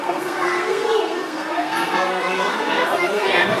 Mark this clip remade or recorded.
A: remade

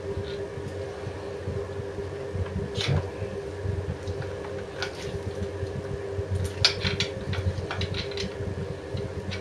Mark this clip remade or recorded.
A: recorded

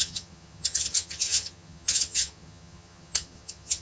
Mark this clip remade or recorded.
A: remade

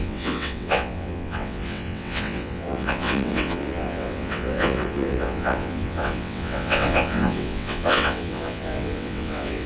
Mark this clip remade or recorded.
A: remade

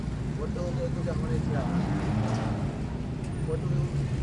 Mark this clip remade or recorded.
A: recorded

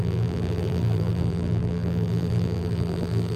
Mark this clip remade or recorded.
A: remade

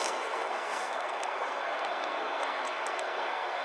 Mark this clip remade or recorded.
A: remade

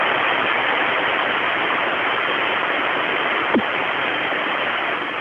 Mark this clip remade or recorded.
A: recorded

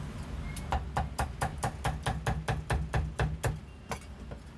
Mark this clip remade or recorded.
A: recorded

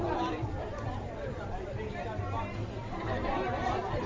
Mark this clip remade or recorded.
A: remade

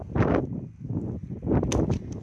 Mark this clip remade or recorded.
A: recorded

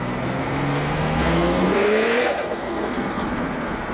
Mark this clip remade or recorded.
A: remade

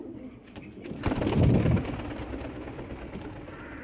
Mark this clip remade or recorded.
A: recorded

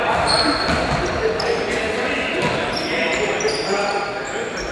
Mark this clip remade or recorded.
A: recorded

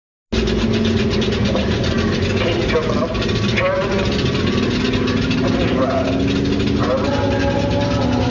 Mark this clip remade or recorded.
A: recorded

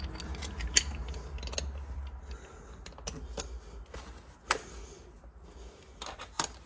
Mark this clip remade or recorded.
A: recorded